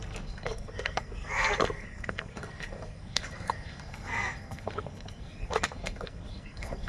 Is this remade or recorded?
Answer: remade